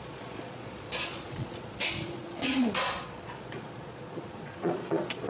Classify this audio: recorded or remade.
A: remade